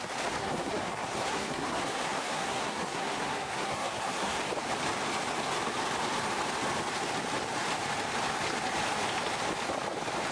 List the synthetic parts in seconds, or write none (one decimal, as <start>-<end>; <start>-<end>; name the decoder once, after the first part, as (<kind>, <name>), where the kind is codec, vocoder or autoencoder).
0.4-4.4 (codec, SNAC)